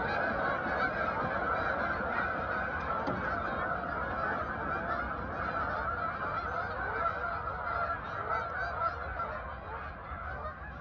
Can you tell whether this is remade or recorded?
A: recorded